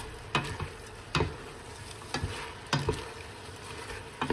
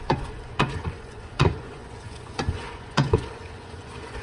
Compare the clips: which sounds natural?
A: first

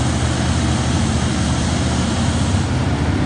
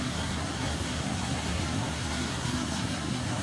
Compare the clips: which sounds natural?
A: first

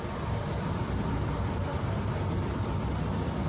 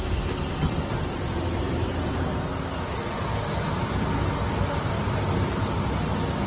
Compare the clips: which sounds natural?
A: second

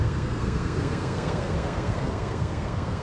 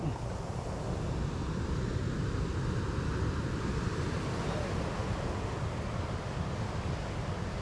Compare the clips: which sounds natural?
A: second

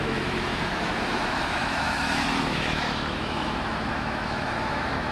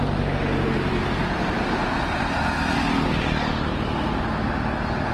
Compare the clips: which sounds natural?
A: second